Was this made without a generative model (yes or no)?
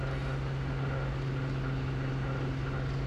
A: yes